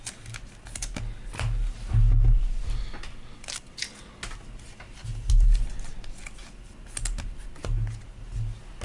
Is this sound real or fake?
real